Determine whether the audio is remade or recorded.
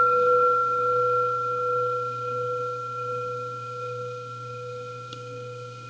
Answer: remade